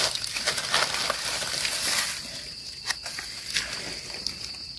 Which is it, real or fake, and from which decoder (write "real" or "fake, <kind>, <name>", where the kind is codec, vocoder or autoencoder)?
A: real